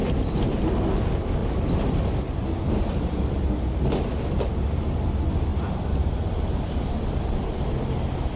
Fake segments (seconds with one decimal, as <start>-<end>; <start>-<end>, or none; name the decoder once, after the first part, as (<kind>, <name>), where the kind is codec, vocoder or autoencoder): 0.0-0.6 (vocoder, BigVGAN v2); 5.5-6.5